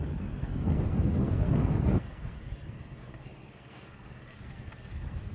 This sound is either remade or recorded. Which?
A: remade